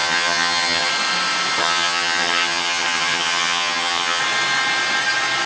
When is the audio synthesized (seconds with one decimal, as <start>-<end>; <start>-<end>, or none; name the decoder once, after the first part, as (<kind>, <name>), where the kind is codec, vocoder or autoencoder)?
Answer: 0.0-0.9 (vocoder, HiFi-GAN); 1.6-4.2